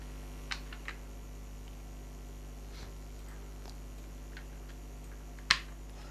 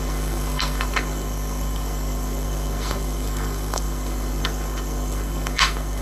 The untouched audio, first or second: first